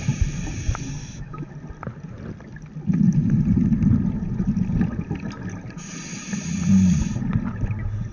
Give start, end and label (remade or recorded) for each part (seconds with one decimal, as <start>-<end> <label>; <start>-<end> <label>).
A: 0.0-1.0 recorded; 1.0-1.5 remade; 1.5-8.1 recorded